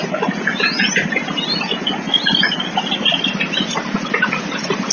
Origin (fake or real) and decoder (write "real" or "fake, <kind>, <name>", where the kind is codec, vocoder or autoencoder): real